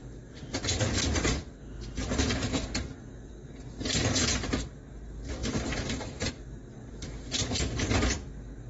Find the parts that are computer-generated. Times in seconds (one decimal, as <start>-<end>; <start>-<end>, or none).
5.4-6.3